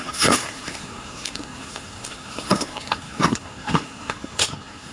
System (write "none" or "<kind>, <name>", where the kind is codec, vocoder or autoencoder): codec, SNAC